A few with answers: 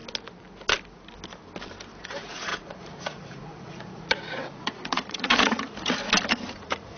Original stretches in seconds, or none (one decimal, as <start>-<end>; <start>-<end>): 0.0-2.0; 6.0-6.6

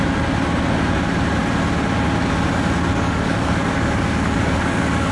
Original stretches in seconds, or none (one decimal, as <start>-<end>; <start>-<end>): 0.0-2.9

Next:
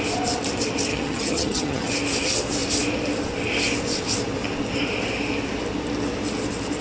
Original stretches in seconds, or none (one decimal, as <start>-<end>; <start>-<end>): 0.0-0.9; 1.9-6.8

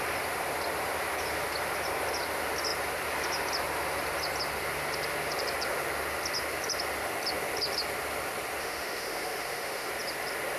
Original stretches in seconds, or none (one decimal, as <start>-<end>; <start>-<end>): 0.0-8.6; 9.9-10.6

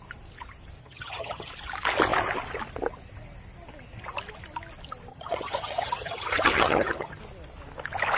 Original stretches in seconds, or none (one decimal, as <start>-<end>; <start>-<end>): 0.0-0.8; 1.5-5.1; 7.2-8.2

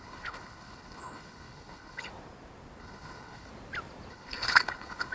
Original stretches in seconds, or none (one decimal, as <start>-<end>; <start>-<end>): 2.1-2.8; 3.5-4.1

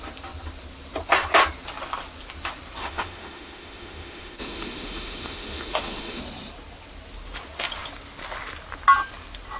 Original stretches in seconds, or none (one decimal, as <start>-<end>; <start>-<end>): 0.0-2.8; 6.2-9.6

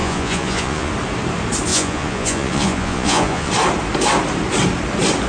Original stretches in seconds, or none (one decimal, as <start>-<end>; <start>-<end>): 0.9-1.7; 3.5-5.3